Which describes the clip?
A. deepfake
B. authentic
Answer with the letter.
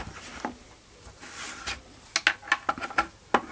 B